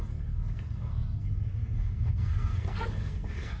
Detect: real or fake fake